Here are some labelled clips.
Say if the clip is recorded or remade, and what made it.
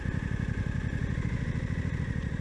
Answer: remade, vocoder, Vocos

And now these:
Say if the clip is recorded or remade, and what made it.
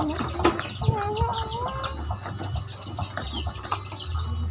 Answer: recorded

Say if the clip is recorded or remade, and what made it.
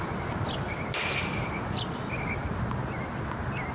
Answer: recorded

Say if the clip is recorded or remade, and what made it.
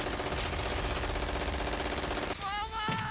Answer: recorded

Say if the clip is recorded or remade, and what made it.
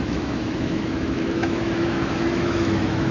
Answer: remade, autoencoder, DAC-VAE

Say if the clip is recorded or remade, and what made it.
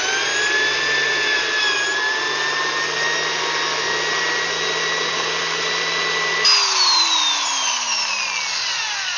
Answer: recorded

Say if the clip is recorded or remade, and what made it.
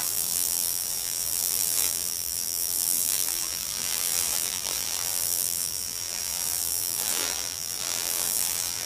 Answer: remade, vocoder, BigVGAN v2